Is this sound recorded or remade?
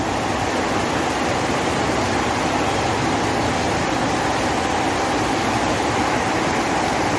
recorded